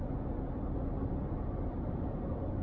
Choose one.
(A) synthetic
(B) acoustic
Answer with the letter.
A